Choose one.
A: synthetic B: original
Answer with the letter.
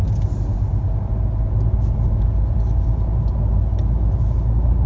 B